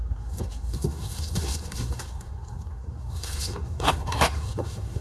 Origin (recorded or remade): remade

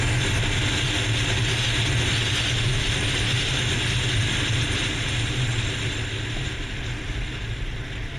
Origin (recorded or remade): recorded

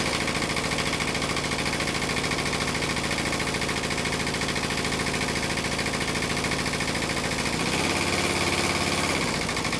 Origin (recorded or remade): recorded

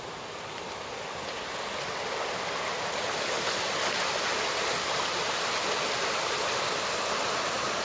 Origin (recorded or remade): recorded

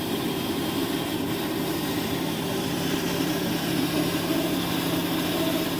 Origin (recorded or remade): remade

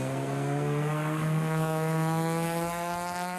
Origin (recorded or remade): remade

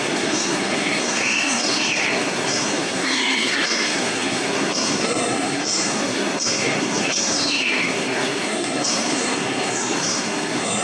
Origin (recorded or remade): remade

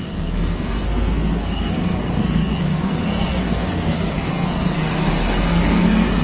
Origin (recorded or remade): remade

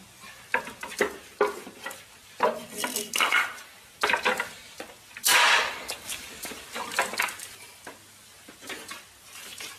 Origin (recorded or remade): recorded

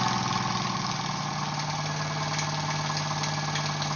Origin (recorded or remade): recorded